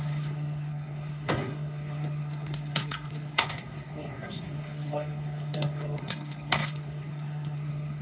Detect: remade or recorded remade